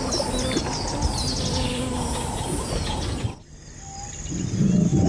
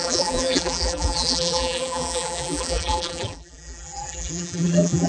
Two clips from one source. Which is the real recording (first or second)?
first